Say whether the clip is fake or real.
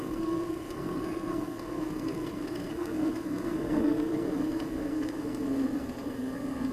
fake